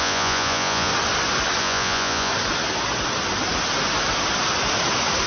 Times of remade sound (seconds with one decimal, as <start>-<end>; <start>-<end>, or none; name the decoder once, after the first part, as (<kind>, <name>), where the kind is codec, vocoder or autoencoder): 0.0-0.9 (vocoder, Vocos); 1.6-2.3